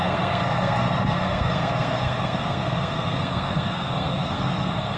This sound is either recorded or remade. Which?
remade